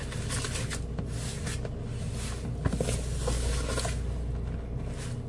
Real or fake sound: real